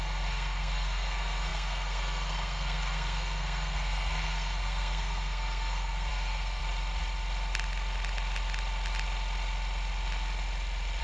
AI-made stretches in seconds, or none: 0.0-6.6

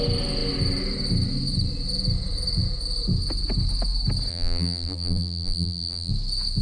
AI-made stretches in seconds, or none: 4.3-6.1

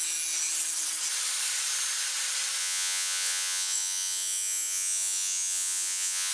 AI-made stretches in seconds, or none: 2.6-6.3

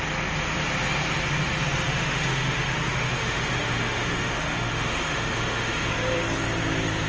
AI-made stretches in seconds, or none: 1.9-5.9

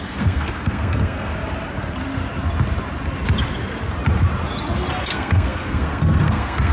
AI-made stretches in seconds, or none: 0.0-1.3; 5.1-6.7